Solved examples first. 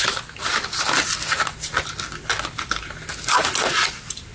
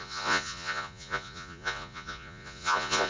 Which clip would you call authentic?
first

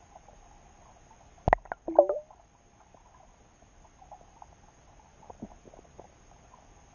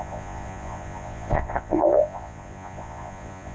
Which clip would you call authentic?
first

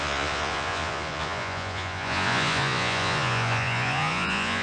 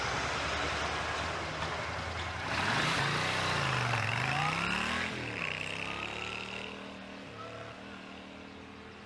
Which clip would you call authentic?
second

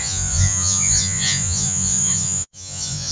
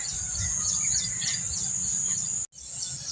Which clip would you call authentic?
second